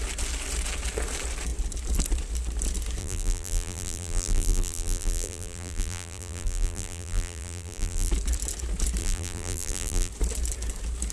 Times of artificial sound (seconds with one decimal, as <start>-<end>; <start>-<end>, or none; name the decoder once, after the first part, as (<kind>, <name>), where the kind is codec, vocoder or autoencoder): 3.0-8.1 (vocoder, BigVGAN v2); 9.0-10.1